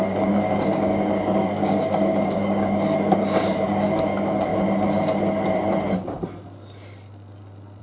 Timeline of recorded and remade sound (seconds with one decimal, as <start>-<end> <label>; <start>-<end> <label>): 0.0-4.5 remade; 4.5-7.8 recorded